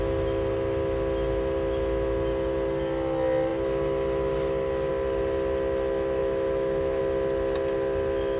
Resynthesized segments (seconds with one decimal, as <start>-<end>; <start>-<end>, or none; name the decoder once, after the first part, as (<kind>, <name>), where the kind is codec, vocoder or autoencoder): 6.2-7.0 (autoencoder, DAC-VAE)